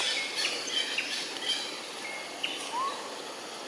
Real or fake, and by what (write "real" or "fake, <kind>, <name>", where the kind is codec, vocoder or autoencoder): real